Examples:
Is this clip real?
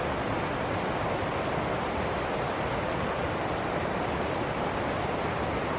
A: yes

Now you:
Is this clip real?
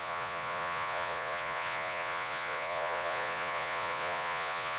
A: no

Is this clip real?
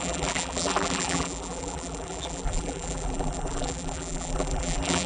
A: no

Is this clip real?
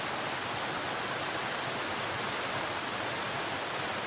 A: yes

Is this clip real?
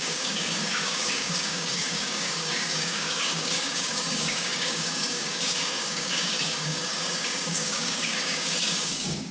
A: no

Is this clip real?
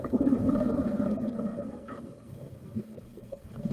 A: no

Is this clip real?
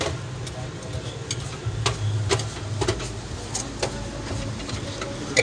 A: yes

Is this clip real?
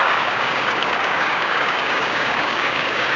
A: no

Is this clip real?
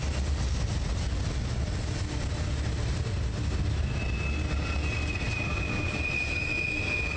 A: yes